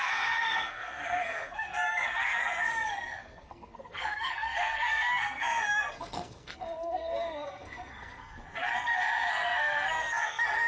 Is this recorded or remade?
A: remade